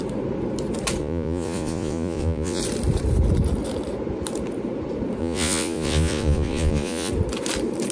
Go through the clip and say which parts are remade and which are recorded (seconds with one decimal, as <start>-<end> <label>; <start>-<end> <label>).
0.0-1.0 recorded; 1.0-2.6 remade; 2.6-5.2 recorded; 5.2-7.1 remade; 7.1-7.9 recorded

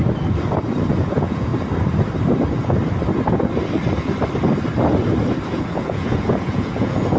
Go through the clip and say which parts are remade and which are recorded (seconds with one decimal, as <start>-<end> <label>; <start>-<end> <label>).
0.0-0.9 recorded; 0.9-1.5 remade; 1.5-5.5 recorded; 5.5-7.2 remade